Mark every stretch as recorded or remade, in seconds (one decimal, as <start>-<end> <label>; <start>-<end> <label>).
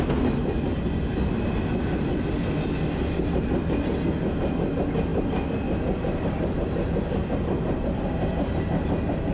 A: 0.0-9.3 recorded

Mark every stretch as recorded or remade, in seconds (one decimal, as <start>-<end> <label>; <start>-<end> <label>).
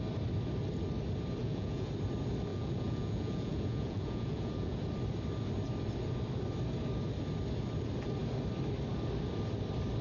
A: 0.0-1.4 recorded; 1.4-1.9 remade; 1.9-2.5 recorded; 2.5-4.8 remade; 4.8-10.0 recorded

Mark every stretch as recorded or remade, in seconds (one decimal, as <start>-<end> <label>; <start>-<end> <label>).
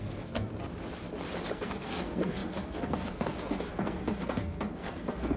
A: 0.0-0.5 remade; 0.5-1.5 recorded; 1.5-5.4 remade